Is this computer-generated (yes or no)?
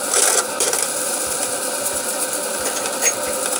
yes